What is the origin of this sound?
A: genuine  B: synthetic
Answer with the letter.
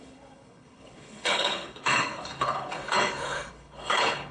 B